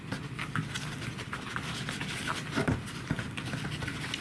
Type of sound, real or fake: real